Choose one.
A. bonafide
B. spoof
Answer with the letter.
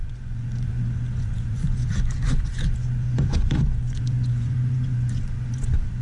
B